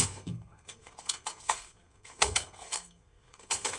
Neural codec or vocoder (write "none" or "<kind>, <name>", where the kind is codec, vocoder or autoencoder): codec, SNAC